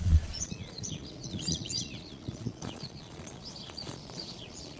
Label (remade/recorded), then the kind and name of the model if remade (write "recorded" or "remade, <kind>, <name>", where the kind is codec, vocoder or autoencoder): remade, vocoder, Vocos